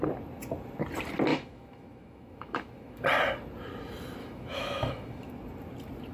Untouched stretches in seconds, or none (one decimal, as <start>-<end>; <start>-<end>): 0.0-1.3; 3.0-4.2; 5.3-6.1